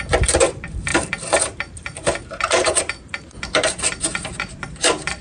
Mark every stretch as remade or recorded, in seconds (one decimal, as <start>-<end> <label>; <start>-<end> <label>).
0.0-5.2 remade